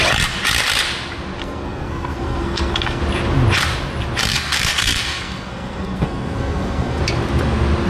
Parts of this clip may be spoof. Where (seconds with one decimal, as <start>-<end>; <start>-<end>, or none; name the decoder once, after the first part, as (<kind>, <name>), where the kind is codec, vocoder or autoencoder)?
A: 1.4-3.0 (codec, SNAC); 4.3-7.0